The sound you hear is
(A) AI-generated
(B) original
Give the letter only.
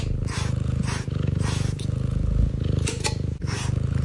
B